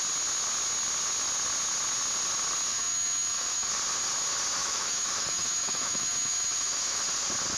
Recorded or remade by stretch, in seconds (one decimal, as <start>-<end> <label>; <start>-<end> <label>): 0.0-2.7 recorded; 2.7-3.7 remade; 3.7-4.6 recorded; 4.6-7.0 remade; 7.0-7.6 recorded